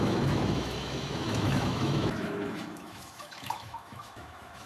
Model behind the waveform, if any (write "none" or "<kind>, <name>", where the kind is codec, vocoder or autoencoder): autoencoder, DAC-VAE